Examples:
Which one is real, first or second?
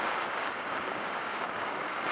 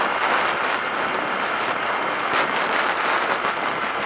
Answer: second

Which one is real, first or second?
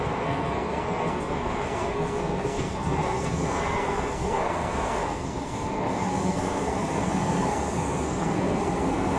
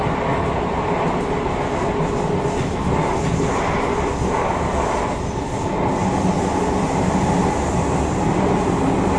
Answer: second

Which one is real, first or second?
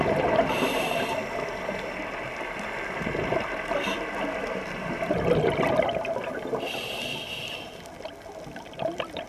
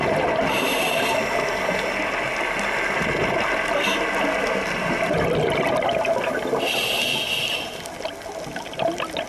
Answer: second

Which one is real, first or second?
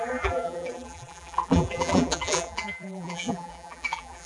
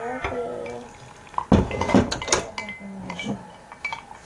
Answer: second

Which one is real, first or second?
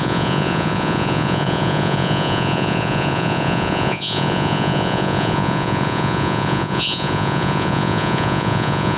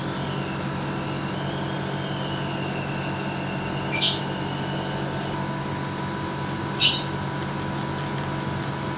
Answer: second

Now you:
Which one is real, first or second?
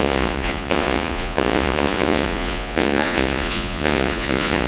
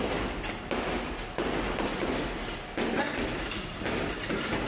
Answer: second